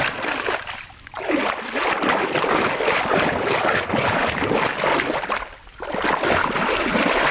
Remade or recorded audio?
recorded